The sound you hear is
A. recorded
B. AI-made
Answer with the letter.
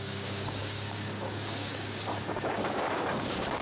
B